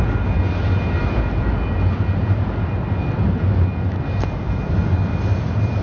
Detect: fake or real real